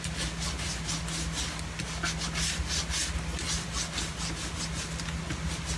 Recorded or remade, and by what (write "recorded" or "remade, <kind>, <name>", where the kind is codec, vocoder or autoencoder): recorded